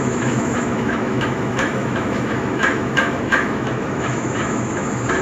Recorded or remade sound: remade